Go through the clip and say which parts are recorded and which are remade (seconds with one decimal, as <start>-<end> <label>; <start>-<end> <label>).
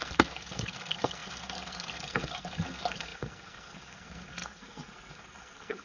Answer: 0.0-5.8 remade